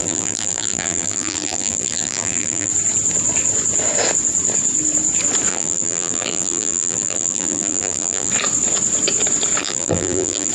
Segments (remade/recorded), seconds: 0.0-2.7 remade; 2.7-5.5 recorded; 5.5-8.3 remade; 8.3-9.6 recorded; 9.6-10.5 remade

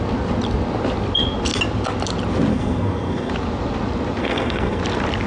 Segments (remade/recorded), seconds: 0.0-2.5 recorded; 2.5-3.3 remade; 3.3-4.2 recorded; 4.2-4.8 remade; 4.8-5.3 recorded